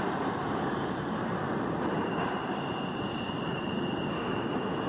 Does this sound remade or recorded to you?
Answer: remade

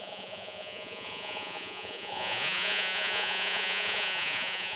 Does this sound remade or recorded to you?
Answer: remade